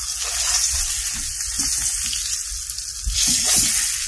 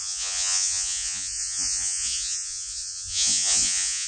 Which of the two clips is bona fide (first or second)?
first